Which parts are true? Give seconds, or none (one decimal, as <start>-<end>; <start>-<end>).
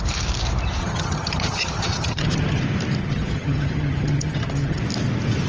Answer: 0.0-0.8; 2.6-3.0; 4.8-5.5